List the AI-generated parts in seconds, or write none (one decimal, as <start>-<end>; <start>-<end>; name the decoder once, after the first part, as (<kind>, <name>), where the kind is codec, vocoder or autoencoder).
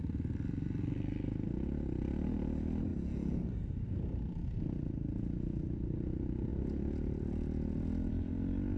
none